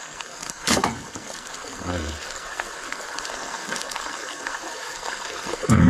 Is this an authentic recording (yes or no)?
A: no